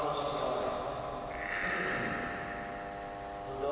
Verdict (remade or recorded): recorded